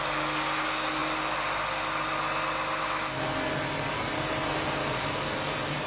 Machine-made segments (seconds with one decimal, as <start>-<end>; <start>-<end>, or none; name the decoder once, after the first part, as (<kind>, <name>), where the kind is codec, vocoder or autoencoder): none